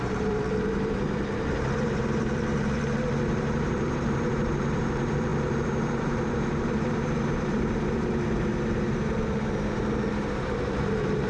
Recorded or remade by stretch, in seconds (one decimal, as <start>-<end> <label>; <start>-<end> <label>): 0.0-11.3 remade